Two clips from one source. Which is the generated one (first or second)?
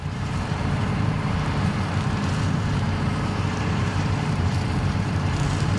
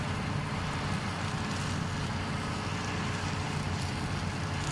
first